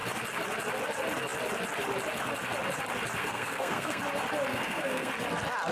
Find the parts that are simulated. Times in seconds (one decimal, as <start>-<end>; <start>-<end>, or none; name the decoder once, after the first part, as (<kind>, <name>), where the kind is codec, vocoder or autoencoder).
3.2-4.0 (codec, SNAC); 4.5-5.1